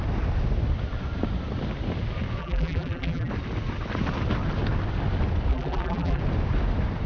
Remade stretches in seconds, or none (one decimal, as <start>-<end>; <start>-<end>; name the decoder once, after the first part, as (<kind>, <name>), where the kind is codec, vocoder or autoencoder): 2.4-3.3 (vocoder, BigVGAN v2); 5.5-6.2